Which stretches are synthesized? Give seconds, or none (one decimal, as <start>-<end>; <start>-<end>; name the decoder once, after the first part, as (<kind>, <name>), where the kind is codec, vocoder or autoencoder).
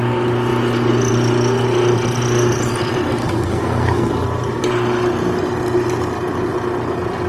3.2-4.1 (codec, SNAC)